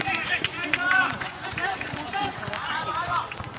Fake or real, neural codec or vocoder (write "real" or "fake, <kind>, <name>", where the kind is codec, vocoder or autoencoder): fake, vocoder, Vocos